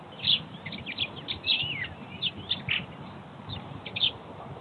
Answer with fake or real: real